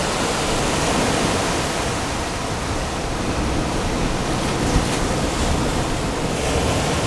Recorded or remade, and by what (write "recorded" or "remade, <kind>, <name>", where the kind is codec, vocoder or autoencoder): recorded